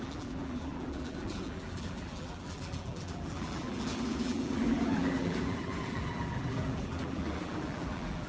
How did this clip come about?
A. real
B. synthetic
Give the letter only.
B